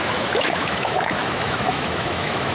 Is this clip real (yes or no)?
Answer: no